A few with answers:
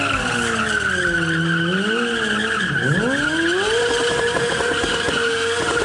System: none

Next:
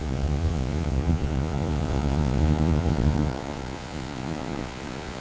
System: vocoder, Vocos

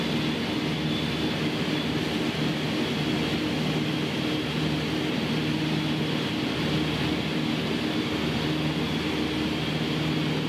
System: none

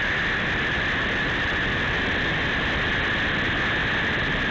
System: none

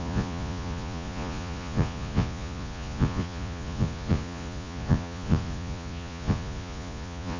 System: vocoder, Vocos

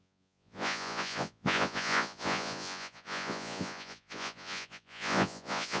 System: vocoder, Vocos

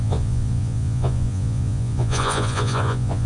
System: vocoder, Vocos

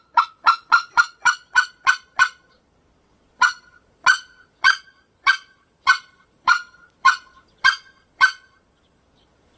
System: vocoder, Vocos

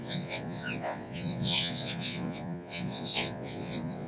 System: vocoder, Vocos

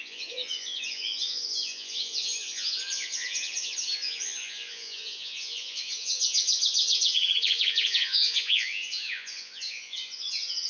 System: vocoder, Vocos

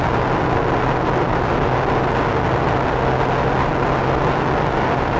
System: none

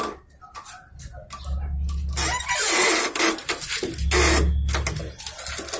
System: none